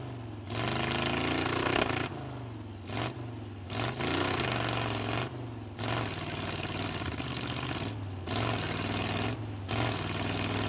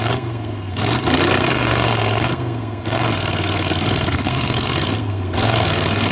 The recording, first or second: first